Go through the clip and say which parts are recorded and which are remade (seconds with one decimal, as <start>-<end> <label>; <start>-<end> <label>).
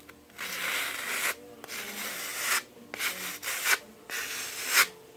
0.0-5.2 recorded